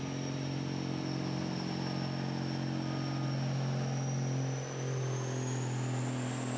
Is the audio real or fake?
real